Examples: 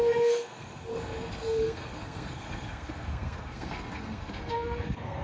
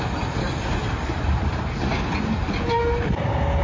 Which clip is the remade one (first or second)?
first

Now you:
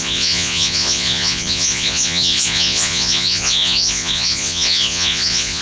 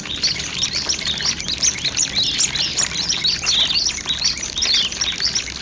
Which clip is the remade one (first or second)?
first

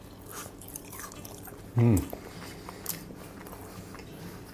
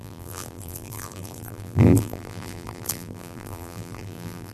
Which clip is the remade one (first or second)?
second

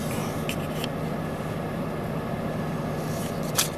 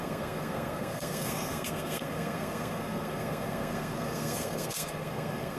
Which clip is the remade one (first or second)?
second